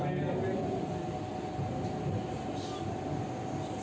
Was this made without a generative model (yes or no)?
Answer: yes